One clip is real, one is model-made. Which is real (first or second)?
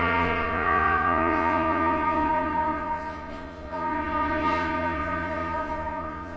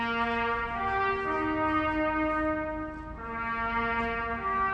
second